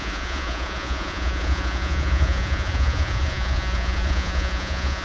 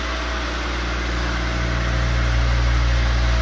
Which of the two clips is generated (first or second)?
first